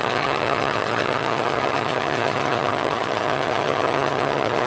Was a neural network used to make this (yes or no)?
yes